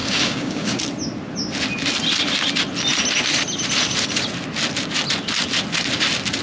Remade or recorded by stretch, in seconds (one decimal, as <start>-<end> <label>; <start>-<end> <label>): 0.0-0.8 remade; 0.8-6.4 recorded